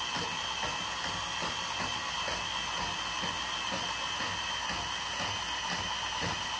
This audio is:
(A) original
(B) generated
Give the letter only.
A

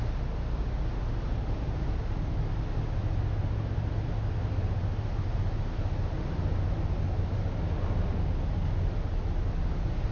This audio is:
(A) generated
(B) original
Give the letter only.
B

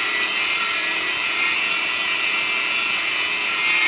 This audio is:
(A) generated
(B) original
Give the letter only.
B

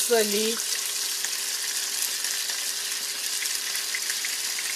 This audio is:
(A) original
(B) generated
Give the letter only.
A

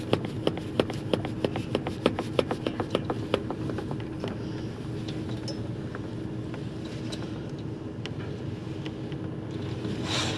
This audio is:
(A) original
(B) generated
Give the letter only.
A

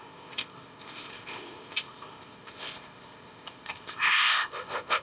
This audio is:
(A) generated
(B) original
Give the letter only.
A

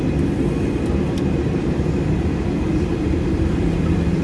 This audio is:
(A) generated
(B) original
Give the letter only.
A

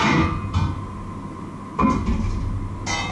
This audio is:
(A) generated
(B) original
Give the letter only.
B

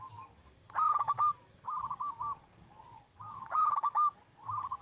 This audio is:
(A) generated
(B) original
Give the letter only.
A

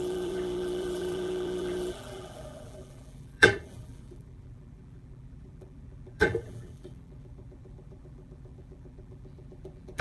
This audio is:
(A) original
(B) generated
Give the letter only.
B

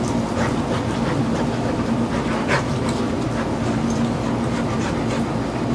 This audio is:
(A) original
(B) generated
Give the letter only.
A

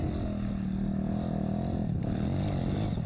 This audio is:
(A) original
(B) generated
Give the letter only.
A